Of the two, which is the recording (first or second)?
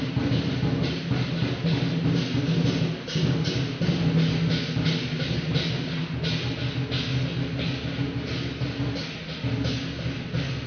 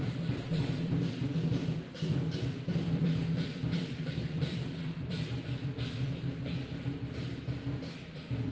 first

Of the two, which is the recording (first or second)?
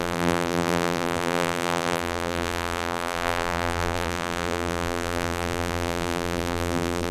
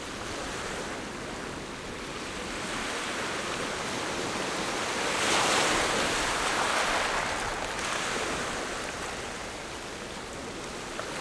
second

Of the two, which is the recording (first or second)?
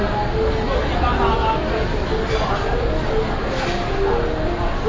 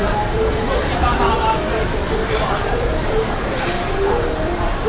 first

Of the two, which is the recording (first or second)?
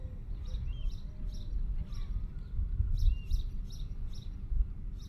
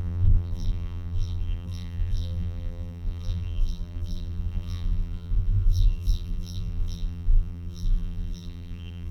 first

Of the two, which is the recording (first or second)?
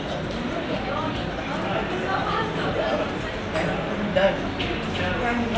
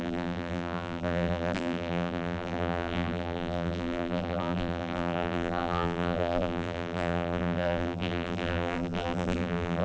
first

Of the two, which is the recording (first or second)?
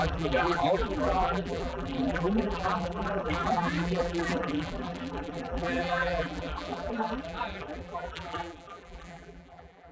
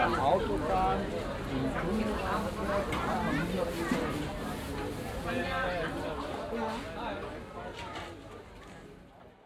second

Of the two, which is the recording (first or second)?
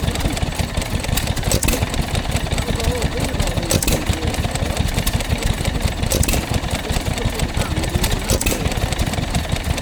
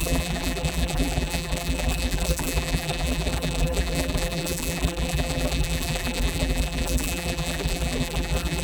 first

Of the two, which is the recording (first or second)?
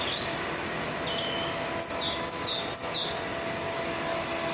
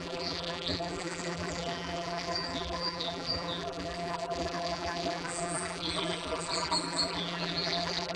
first